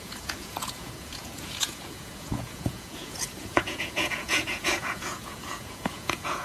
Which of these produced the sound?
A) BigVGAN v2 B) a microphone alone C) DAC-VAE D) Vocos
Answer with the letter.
D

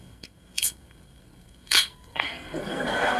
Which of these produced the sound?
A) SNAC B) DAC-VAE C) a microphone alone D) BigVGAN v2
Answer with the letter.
A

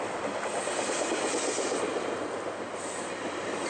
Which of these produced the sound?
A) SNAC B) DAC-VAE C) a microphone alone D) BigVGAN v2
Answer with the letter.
D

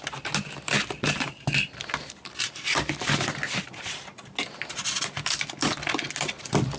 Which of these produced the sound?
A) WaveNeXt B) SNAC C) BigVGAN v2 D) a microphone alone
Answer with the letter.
D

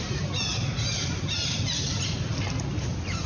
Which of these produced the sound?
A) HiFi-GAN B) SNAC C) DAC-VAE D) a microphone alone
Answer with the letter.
D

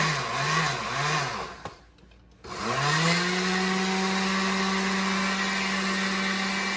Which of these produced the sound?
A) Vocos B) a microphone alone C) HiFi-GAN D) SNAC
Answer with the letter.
B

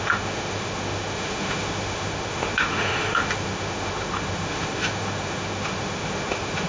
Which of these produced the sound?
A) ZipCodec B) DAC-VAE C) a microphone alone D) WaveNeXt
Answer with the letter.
B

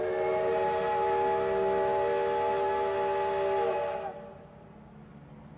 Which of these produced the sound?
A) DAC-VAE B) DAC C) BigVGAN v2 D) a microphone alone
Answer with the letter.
D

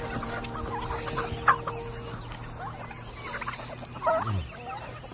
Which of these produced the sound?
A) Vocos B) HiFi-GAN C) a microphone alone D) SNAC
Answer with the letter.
C